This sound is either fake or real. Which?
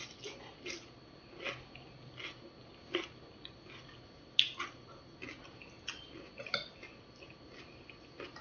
real